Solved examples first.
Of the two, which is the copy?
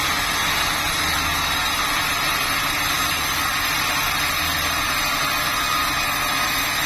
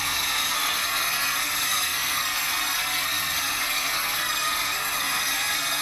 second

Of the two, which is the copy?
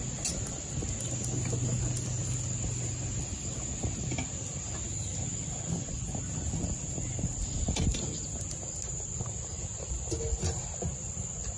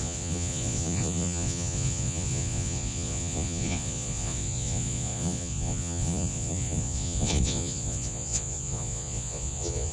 second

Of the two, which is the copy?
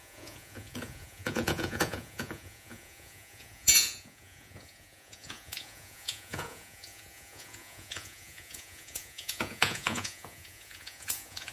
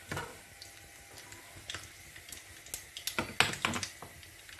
first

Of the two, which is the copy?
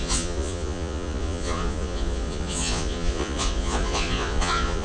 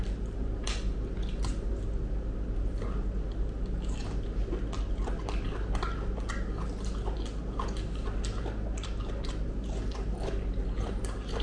first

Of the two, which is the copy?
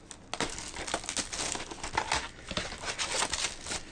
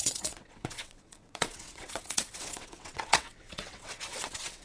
second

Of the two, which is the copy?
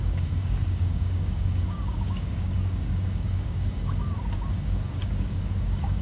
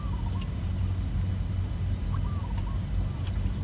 first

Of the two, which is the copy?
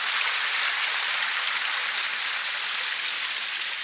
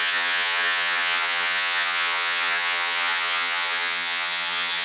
second